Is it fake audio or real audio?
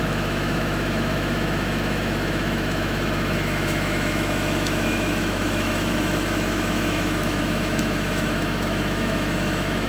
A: fake